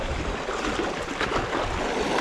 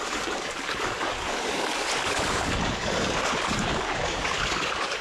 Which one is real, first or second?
first